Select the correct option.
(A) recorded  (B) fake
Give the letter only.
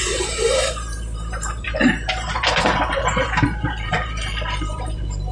B